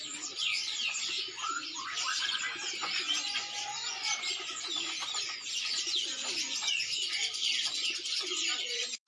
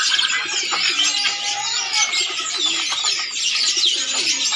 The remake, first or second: first